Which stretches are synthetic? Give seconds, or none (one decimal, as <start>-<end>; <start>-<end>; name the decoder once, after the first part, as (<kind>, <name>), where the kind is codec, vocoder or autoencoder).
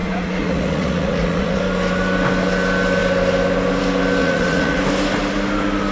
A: 0.0-1.6 (vocoder, Vocos); 4.2-4.8